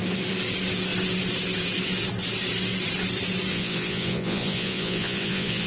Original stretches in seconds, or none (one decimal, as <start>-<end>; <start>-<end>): 0.0-3.5